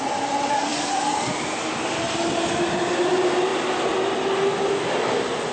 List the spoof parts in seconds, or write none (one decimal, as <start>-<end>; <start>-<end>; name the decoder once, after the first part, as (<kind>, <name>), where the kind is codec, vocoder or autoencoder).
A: none